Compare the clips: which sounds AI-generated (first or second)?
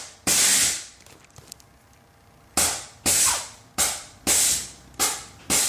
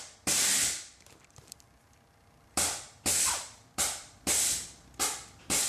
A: second